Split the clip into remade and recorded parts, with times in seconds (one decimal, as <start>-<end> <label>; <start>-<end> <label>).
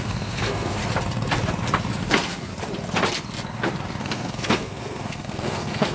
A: 0.0-0.8 remade; 0.8-2.0 recorded; 2.0-2.5 remade; 2.5-4.0 recorded; 4.0-5.9 remade